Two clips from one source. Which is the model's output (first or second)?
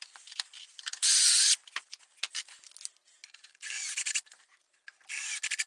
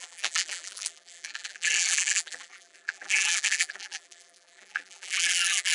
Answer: second